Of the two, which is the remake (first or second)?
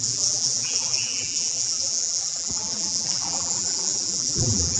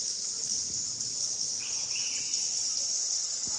first